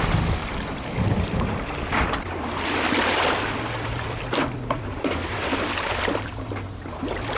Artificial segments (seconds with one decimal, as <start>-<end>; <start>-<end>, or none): 0.4-4.8